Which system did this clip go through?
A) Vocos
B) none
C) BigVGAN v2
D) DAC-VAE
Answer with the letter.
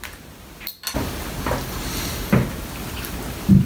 B